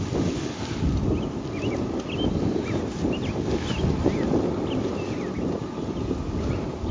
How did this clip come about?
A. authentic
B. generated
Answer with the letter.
A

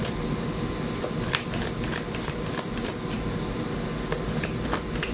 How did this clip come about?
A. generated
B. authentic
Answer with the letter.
B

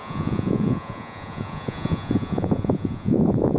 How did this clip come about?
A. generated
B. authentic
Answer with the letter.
A